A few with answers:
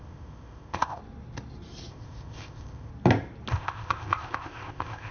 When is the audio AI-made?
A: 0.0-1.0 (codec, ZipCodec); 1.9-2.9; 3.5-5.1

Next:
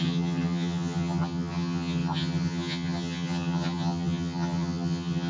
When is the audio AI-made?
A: 0.0-5.3 (vocoder, HiFi-GAN)

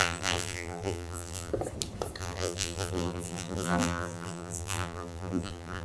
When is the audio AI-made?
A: 0.0-1.5 (vocoder, BigVGAN v2); 2.2-5.8

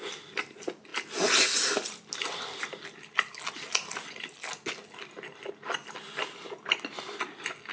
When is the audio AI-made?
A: none

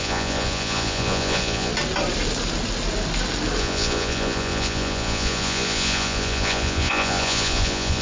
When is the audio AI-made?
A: 0.0-1.7 (vocoder, Vocos); 3.6-8.0

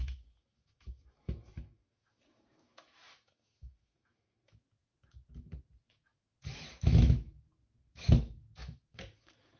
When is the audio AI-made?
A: 0.0-9.6 (autoencoder, DAC-VAE)

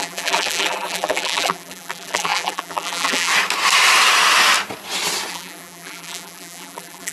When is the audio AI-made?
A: 0.0-3.3 (vocoder, BigVGAN v2); 5.3-7.1